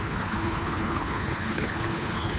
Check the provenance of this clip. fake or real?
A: fake